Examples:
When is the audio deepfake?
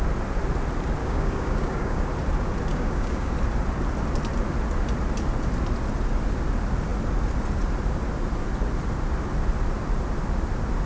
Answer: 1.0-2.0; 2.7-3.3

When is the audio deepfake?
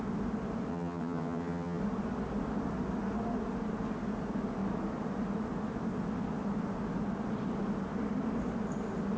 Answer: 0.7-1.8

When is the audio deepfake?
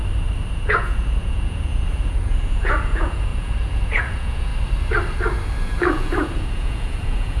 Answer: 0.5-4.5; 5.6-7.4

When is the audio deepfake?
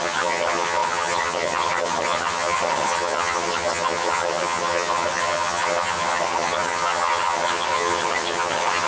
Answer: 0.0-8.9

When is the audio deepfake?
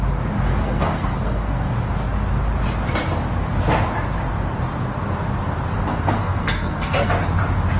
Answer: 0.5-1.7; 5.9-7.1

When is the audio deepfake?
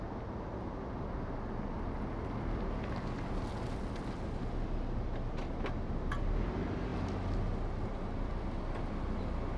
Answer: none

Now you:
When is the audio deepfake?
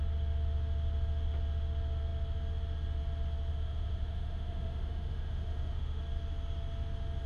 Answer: 3.5-6.0